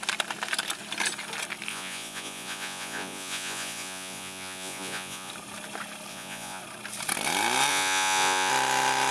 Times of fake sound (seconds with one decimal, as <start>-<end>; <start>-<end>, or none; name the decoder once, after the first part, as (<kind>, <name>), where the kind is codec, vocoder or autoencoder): 1.7-5.3 (vocoder, Vocos); 6.1-6.6; 7.7-8.5